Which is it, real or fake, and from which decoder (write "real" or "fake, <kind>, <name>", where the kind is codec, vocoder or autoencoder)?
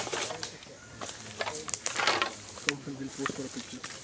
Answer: real